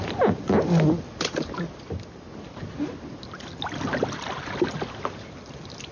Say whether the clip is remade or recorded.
recorded